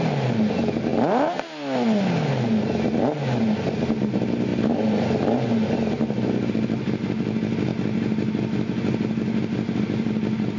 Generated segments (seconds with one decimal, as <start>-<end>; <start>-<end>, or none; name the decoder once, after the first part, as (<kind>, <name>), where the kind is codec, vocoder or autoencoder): none